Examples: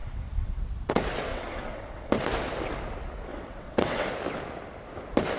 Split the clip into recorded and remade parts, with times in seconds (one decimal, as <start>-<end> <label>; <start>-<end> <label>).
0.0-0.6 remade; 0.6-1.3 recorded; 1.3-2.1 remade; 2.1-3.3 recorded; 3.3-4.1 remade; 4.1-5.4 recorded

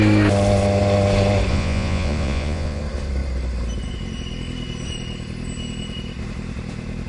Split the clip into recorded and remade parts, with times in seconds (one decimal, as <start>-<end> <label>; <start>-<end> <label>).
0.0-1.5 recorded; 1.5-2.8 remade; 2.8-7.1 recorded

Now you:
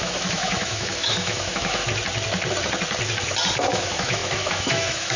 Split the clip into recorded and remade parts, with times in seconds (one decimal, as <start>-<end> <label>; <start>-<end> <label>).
0.0-1.8 remade; 1.8-3.6 recorded; 3.6-5.2 remade

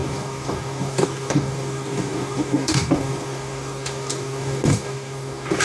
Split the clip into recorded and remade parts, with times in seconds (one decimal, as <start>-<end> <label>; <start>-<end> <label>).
0.0-5.6 remade

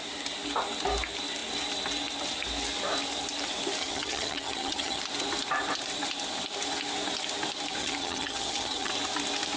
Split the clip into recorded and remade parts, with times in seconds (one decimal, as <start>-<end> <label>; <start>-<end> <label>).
0.0-3.8 recorded; 3.8-5.0 remade; 5.0-7.8 recorded; 7.8-8.9 remade; 8.9-9.6 recorded

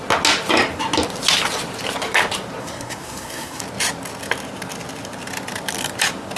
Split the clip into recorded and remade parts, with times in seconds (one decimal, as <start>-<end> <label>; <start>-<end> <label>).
0.0-2.6 recorded; 2.6-3.6 remade; 3.6-6.4 recorded